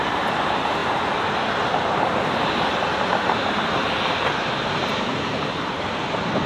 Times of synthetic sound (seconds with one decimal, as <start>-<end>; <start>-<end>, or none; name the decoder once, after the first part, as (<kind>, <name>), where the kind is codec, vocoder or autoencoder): none